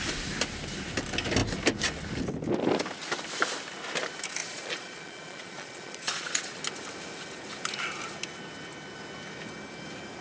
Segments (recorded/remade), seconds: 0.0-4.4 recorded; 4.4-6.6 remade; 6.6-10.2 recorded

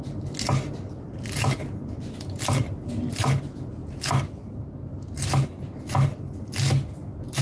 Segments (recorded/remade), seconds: 0.0-7.4 recorded